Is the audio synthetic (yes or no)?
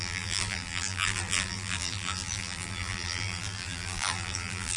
yes